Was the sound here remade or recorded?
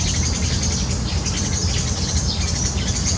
recorded